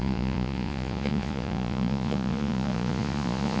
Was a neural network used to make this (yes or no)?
yes